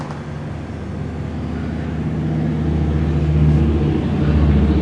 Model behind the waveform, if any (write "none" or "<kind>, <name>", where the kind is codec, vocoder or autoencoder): none